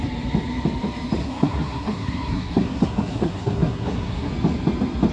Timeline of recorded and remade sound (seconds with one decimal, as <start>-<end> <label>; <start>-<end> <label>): 0.0-1.2 recorded; 1.2-4.3 remade; 4.3-5.1 recorded